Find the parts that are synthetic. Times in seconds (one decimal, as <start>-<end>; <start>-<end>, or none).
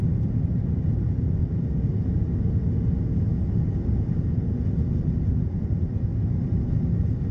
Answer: none